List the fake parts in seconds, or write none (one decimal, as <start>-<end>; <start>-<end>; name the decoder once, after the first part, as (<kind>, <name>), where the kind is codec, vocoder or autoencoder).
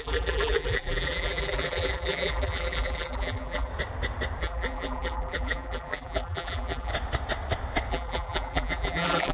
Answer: 0.0-3.7 (vocoder, BigVGAN v2); 4.4-6.9; 7.9-9.3